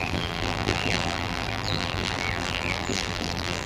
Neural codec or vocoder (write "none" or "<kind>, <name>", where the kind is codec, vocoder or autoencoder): vocoder, BigVGAN v2